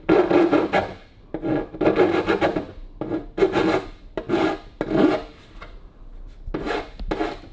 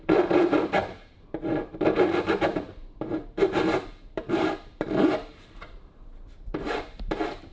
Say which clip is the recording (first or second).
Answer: first